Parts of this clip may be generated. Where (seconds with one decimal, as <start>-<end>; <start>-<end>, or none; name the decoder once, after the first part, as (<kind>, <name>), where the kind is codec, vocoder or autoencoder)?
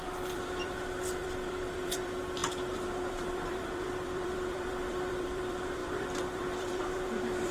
0.0-7.5 (vocoder, BigVGAN v2)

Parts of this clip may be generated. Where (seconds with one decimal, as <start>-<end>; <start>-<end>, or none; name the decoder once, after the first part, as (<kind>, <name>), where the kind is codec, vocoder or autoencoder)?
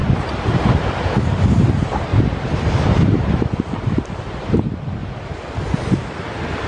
0.0-1.4 (vocoder, BigVGAN v2); 2.1-2.7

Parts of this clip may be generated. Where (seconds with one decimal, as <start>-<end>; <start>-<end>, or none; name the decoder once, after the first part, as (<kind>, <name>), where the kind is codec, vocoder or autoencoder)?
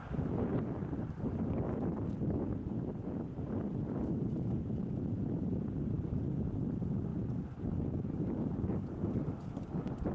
0.5-5.0 (vocoder, BigVGAN v2); 7.1-7.8